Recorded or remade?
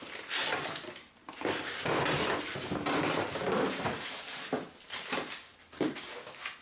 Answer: recorded